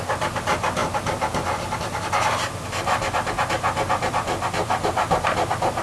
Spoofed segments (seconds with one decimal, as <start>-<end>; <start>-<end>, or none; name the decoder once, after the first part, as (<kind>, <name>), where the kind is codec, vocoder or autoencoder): none